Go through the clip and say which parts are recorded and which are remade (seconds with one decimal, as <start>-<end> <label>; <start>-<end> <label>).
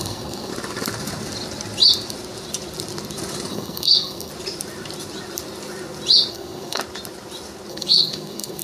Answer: 0.0-0.5 remade; 0.5-3.5 recorded; 3.5-4.3 remade; 4.3-6.3 recorded; 6.3-6.8 remade; 6.8-7.7 recorded; 7.7-8.6 remade